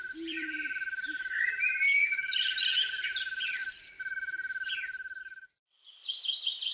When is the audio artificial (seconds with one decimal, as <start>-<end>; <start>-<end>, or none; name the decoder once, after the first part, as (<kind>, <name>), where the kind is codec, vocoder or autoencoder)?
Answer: 0.0-3.6 (vocoder, BigVGAN v2); 5.2-6.7